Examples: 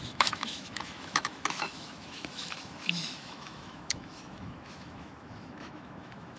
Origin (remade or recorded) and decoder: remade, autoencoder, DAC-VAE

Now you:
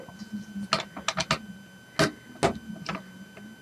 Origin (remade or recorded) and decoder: recorded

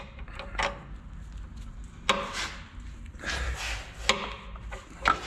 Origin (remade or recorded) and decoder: recorded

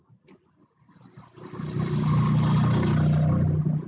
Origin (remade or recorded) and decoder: recorded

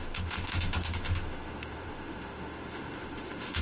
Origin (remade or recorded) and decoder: remade, autoencoder, DAC-VAE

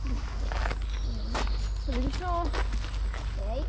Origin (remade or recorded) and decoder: recorded